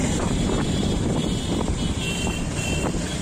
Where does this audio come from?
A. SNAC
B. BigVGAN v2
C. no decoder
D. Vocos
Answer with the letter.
B